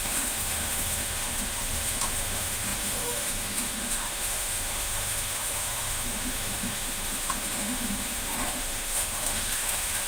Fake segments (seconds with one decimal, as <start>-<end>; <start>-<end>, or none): 0.0-10.1